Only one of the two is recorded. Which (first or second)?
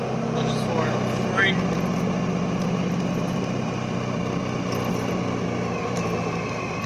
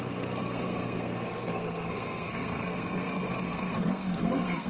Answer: first